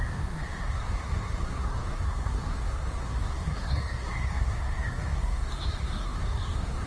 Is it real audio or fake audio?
fake